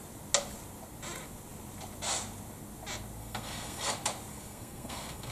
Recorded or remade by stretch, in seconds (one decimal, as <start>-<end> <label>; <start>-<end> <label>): 0.0-3.2 recorded; 3.2-3.9 remade; 3.9-4.3 recorded; 4.3-5.3 remade